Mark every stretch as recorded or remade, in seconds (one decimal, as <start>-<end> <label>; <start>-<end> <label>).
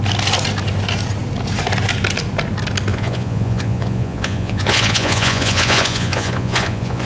0.0-2.9 recorded; 2.9-7.1 remade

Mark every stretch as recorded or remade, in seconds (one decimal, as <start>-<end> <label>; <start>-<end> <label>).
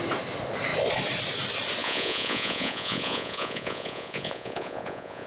0.0-1.8 recorded; 1.8-5.3 remade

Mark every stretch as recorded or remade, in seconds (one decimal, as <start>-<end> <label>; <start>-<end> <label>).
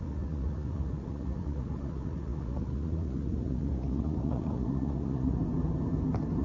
0.0-5.4 remade; 5.4-6.4 recorded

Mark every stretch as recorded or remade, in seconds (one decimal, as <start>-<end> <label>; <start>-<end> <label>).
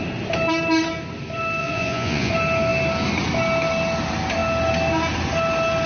0.0-1.6 recorded; 1.6-2.3 remade; 2.3-5.9 recorded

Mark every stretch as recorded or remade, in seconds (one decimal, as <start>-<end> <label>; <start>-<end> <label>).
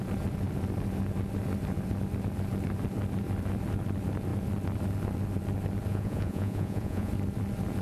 0.0-5.9 recorded; 5.9-7.1 remade; 7.1-7.8 recorded